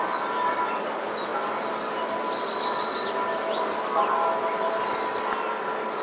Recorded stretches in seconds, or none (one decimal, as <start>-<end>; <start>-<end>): 0.0-1.3; 4.9-6.0